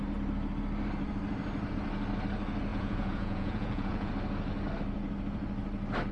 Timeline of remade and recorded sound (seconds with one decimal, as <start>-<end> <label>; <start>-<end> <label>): 0.0-2.7 recorded; 2.7-4.1 remade; 4.1-6.1 recorded